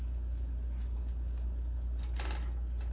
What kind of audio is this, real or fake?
real